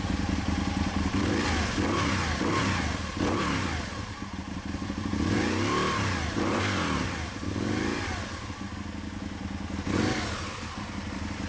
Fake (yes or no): no